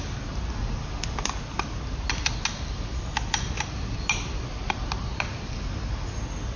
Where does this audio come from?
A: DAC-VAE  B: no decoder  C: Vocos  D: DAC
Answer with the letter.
B